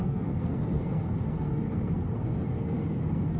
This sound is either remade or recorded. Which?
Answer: remade